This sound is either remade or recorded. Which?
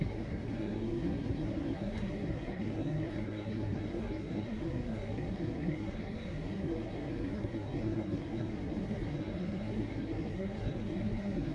remade